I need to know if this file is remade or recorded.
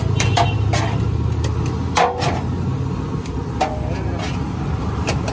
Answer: recorded